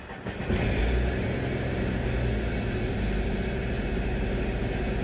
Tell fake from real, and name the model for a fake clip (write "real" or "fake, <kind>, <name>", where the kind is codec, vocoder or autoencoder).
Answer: real